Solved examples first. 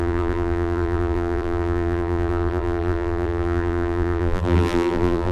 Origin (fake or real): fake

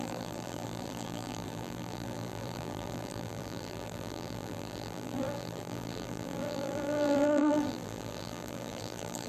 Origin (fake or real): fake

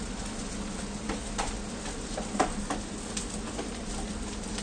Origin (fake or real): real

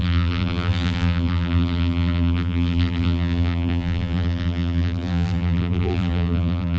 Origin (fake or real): fake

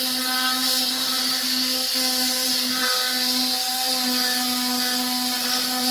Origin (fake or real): real